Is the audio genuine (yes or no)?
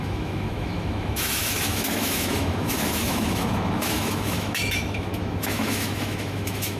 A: no